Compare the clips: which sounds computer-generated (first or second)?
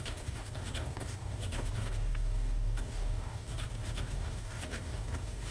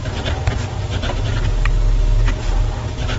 first